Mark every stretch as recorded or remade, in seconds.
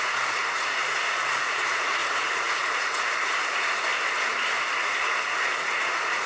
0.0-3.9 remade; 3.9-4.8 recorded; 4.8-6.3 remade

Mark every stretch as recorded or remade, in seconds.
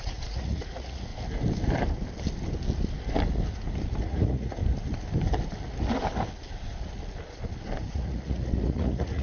0.0-1.1 remade; 1.1-4.0 recorded; 4.0-4.6 remade; 4.6-7.9 recorded; 7.9-9.2 remade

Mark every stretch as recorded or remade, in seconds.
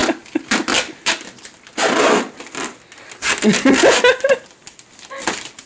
0.0-5.7 recorded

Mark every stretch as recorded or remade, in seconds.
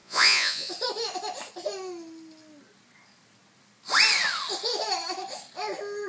0.0-0.7 remade; 0.7-6.1 recorded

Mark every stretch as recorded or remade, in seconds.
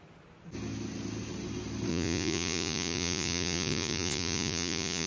0.0-1.9 recorded; 1.9-5.1 remade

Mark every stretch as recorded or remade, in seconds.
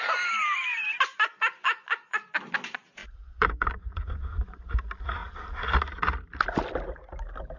0.0-3.0 recorded; 3.0-4.7 remade; 4.7-7.6 recorded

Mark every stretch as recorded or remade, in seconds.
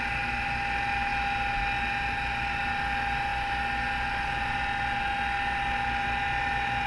0.0-6.9 recorded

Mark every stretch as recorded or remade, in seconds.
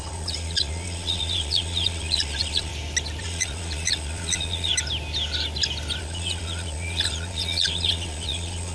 0.0-2.7 remade; 2.7-3.2 recorded; 3.2-4.7 remade; 4.7-6.0 recorded; 6.0-8.7 remade